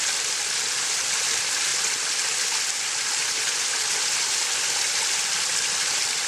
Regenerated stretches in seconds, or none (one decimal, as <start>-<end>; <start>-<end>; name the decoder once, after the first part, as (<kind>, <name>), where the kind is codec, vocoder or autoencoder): none